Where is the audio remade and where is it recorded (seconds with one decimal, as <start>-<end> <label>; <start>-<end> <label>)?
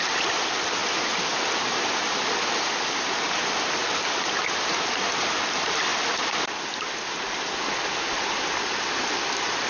0.0-0.8 remade; 0.8-3.1 recorded; 3.1-3.8 remade; 3.8-5.2 recorded; 5.2-5.9 remade; 5.9-8.3 recorded; 8.3-9.7 remade